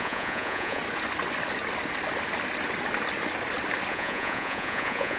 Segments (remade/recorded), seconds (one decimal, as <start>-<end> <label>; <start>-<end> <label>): 0.0-0.8 remade; 0.8-3.9 recorded; 3.9-5.2 remade